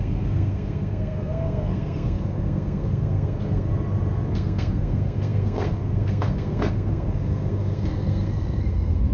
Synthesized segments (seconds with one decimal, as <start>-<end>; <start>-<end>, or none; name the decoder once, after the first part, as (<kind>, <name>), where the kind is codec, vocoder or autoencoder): 0.0-3.7 (codec, SNAC); 4.3-9.1